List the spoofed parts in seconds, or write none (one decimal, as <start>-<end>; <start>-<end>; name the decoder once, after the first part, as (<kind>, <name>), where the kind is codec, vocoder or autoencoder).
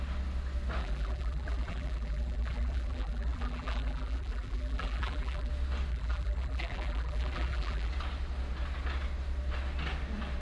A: 0.8-5.5 (vocoder, BigVGAN v2); 5.9-7.9